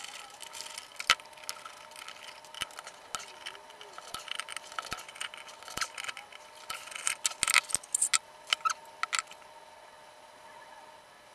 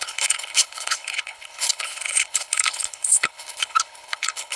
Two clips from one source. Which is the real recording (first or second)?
first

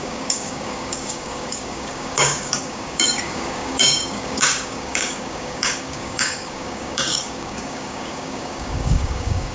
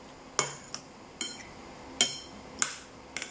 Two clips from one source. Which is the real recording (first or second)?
second